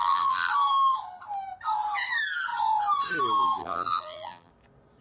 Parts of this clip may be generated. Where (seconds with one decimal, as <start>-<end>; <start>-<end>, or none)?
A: 0.0-0.5; 3.6-4.5

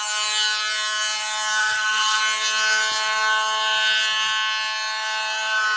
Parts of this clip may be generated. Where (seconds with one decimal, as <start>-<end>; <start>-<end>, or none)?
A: 1.6-2.2

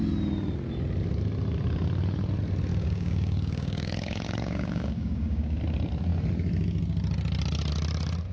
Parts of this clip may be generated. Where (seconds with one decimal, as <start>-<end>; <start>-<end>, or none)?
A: 2.7-5.6

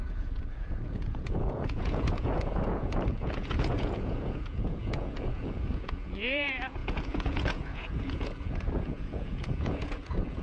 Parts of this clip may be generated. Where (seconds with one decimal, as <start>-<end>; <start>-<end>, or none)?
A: 0.0-10.4

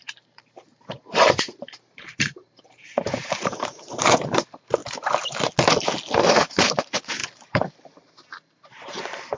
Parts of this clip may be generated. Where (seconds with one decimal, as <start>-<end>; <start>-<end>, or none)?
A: 0.0-4.8; 6.2-9.4

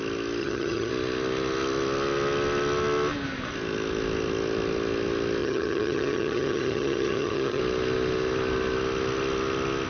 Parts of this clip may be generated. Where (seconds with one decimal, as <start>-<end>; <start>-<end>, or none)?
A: 0.4-0.9; 5.4-7.6

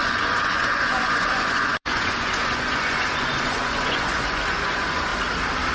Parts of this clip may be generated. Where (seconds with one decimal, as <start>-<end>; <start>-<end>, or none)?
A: 0.0-5.1

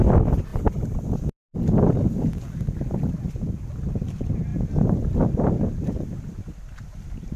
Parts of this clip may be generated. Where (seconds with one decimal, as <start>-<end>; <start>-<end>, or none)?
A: none